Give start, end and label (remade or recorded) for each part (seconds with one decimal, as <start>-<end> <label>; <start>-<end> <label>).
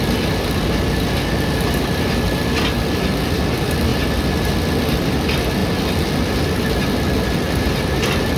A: 0.0-8.4 recorded